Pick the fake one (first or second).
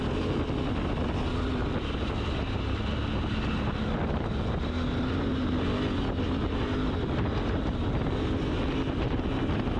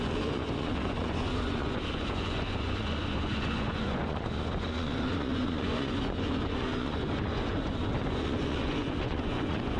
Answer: second